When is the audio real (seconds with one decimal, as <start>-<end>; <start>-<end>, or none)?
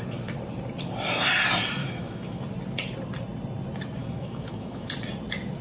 0.0-1.8; 2.4-4.0; 4.9-5.6